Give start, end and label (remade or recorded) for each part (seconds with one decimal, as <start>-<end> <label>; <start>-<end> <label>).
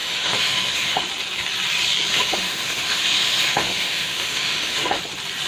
0.0-1.0 remade; 1.0-2.1 recorded; 2.1-5.0 remade; 5.0-5.5 recorded